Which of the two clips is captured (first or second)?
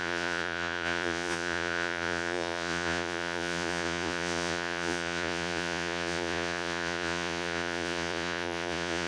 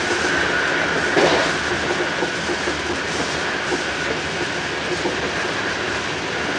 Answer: second